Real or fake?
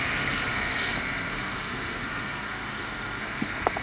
fake